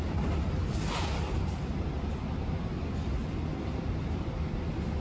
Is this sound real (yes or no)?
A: yes